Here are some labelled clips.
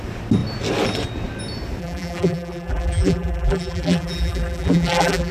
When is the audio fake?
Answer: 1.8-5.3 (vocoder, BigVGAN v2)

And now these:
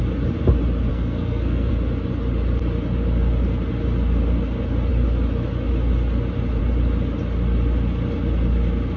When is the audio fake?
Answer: 0.9-1.7 (codec, SNAC)

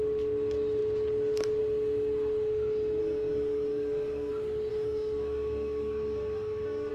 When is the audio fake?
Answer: 3.0-4.3 (codec, DAC); 4.7-6.9

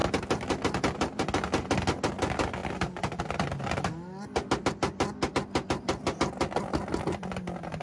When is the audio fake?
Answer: none

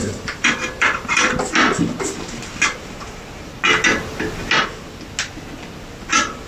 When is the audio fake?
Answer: 0.0-1.3 (vocoder, BigVGAN v2)

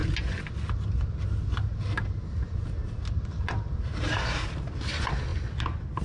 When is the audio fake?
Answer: none